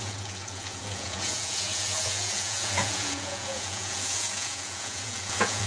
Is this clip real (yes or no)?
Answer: no